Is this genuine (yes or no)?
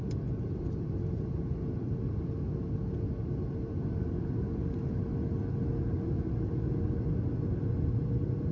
yes